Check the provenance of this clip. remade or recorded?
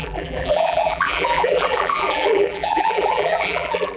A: remade